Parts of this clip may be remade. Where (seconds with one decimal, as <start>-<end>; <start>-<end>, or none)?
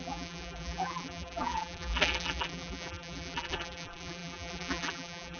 0.0-5.4